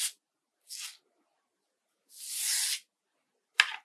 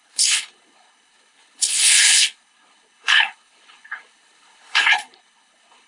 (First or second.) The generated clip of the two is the second